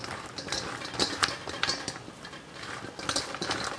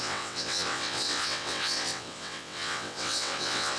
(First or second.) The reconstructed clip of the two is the second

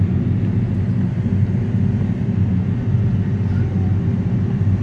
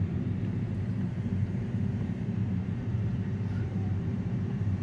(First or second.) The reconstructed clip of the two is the second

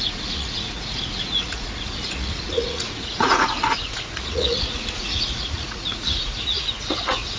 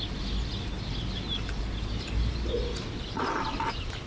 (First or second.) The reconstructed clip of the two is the first